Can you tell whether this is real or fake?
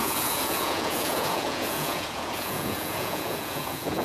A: fake